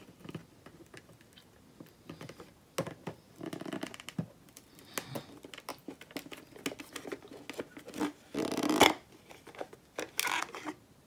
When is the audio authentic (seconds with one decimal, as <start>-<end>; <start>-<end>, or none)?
0.0-11.1